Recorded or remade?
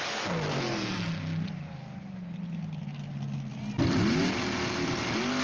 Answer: recorded